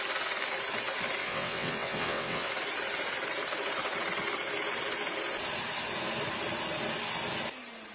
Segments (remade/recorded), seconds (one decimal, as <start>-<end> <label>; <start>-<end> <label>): 0.0-1.2 recorded; 1.2-2.5 remade; 2.5-7.9 recorded